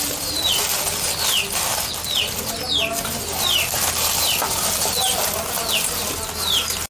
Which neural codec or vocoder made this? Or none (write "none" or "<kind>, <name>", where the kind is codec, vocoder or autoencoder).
none